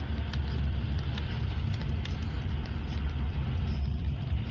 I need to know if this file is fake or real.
fake